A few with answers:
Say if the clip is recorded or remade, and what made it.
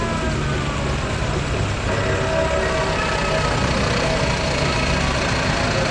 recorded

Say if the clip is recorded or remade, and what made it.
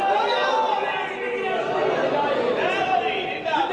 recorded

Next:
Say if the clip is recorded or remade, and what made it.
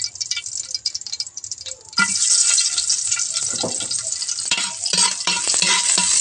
recorded